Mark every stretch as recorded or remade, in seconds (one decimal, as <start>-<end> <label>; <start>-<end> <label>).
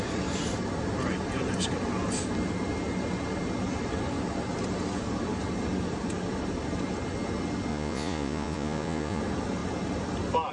0.0-7.7 recorded; 7.7-9.2 remade; 9.2-10.5 recorded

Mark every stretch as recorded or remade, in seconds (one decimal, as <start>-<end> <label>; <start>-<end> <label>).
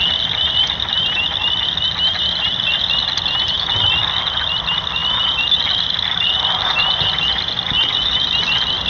0.0-8.9 recorded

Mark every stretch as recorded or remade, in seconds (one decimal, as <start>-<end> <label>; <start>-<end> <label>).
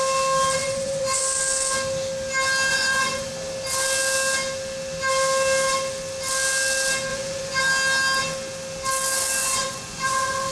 0.0-0.6 recorded; 0.6-1.2 remade; 1.2-2.7 recorded; 2.7-3.3 remade; 3.3-7.1 recorded; 7.1-7.6 remade; 7.6-9.4 recorded; 9.4-10.5 remade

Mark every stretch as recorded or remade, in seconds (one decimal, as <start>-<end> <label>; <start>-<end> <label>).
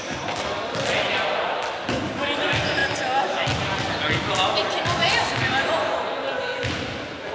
0.0-7.3 recorded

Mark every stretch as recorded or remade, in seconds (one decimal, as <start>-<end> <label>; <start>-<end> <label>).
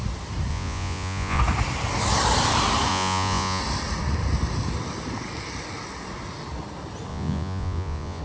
0.0-0.5 recorded; 0.5-1.4 remade; 1.4-2.9 recorded; 2.9-3.6 remade; 3.6-7.1 recorded; 7.1-8.2 remade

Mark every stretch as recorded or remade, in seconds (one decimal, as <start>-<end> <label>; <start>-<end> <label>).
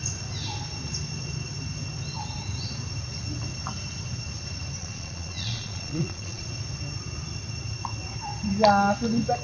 0.0-4.8 recorded; 4.8-6.4 remade; 6.4-9.4 recorded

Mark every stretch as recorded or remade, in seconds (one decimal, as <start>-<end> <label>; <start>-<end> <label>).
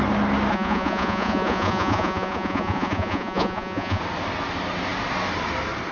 0.0-0.5 recorded; 0.5-4.0 remade; 4.0-5.9 recorded